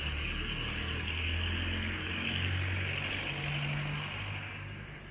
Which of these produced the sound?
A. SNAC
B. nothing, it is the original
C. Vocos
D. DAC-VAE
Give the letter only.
B